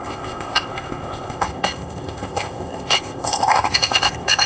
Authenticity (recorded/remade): remade